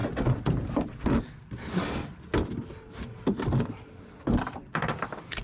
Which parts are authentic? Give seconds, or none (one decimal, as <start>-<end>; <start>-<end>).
0.0-5.4